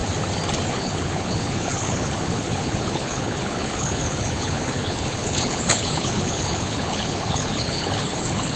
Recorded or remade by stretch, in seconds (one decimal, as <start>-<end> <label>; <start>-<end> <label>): 0.0-0.7 recorded; 0.7-8.6 remade